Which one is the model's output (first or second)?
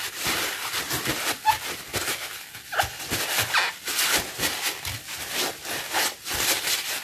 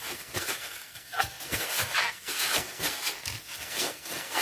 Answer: second